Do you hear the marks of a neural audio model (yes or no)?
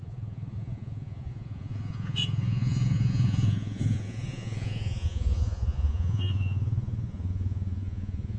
yes